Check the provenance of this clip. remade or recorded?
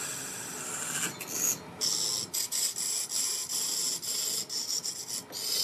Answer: recorded